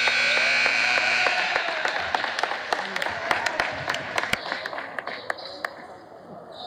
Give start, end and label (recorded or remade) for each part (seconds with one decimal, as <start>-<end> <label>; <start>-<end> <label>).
0.0-0.7 recorded; 0.7-4.7 remade; 4.7-6.7 recorded